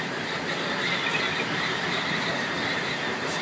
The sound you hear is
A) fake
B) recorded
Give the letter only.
A